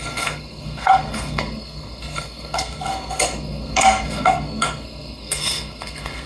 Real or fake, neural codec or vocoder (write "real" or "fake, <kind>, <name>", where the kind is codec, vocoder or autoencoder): fake, codec, SNAC